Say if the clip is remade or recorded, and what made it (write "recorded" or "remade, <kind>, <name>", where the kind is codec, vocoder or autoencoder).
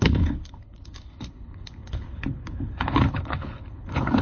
remade, codec, HILCodec